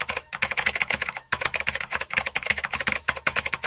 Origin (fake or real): fake